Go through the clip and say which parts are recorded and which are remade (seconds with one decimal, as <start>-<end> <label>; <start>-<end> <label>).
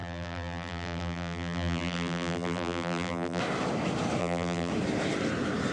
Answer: 0.0-3.4 remade; 3.4-4.2 recorded; 4.2-4.7 remade; 4.7-5.7 recorded